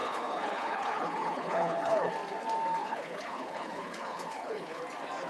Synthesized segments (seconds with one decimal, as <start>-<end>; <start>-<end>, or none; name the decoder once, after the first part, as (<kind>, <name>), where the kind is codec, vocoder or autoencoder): 0.0-2.1 (codec, HILCodec); 2.8-4.8